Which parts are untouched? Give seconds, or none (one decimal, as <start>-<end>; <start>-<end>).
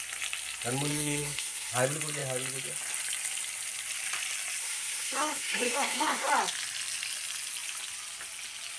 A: 0.0-0.9; 1.7-4.6; 6.3-8.8